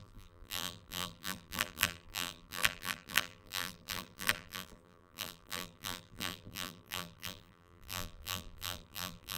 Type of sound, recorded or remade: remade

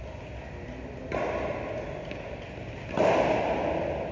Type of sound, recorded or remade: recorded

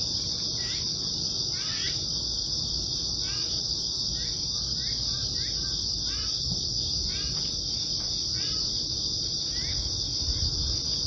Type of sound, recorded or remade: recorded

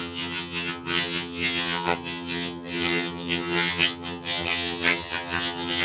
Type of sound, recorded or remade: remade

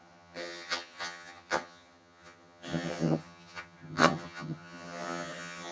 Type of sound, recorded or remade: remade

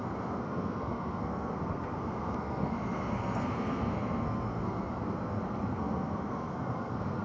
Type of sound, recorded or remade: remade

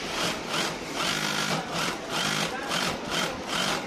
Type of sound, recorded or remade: recorded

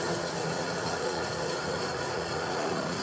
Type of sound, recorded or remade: remade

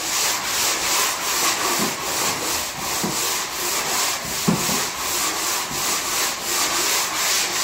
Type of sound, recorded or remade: recorded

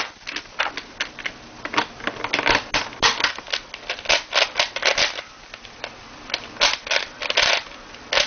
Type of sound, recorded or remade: recorded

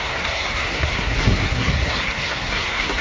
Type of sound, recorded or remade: remade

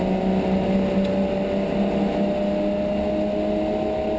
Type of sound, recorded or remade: recorded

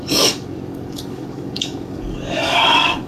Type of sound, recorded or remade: remade